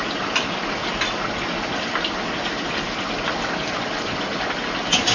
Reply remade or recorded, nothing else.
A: recorded